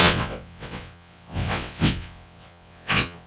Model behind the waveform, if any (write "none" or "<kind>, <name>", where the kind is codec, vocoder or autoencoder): vocoder, WaveNeXt